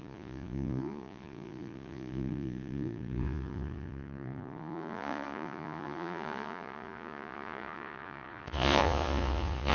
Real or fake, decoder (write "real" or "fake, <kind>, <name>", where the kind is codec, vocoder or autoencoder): fake, vocoder, Vocos